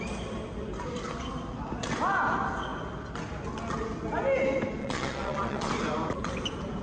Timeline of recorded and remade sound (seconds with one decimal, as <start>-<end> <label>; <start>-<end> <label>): 0.0-4.8 recorded; 4.8-5.7 remade; 5.7-6.8 recorded